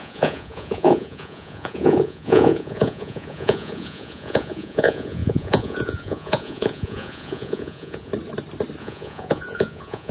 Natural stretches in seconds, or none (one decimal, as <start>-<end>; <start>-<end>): 8.1-8.8